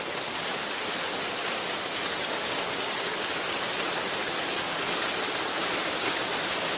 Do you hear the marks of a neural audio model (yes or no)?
no